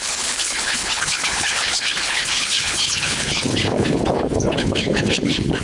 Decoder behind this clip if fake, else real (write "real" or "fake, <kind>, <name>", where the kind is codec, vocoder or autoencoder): fake, codec, HILCodec